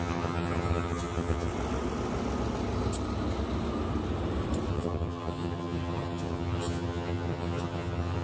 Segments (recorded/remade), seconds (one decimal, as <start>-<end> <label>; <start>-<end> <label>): 0.0-1.5 remade; 1.5-4.7 recorded; 4.7-8.2 remade